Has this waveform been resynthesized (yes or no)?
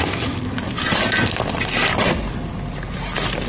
no